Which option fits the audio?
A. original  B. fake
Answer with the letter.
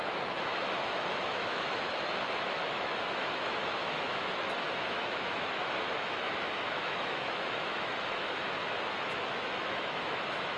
B